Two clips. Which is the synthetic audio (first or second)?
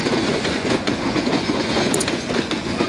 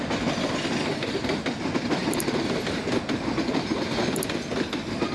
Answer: first